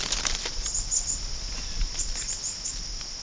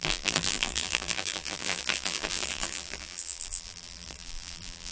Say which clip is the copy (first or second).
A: second